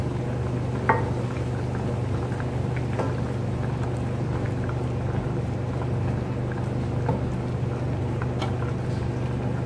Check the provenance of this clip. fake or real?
real